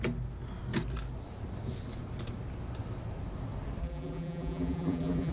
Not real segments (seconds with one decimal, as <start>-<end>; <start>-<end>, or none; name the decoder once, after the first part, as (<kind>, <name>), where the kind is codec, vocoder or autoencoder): 3.8-5.3 (vocoder, BigVGAN v2)